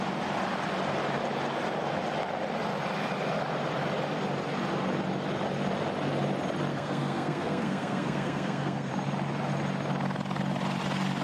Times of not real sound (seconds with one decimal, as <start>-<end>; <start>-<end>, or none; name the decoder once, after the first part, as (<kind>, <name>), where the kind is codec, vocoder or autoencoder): 6.7-8.9 (codec, SNAC)